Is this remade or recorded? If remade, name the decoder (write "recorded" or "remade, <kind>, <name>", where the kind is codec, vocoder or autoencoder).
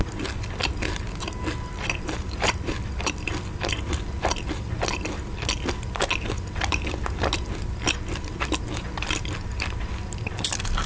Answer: recorded